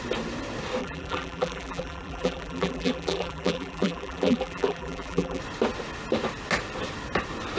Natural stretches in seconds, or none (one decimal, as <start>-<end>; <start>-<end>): 0.0-0.8; 5.4-7.6